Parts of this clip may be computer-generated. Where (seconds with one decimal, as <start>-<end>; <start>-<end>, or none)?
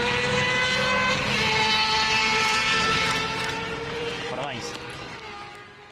2.2-4.6